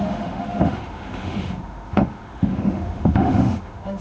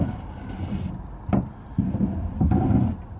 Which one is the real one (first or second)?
second